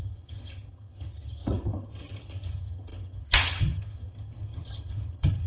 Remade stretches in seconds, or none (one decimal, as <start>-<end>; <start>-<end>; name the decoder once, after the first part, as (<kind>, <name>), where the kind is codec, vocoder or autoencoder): 0.0-5.5 (vocoder, HiFi-GAN)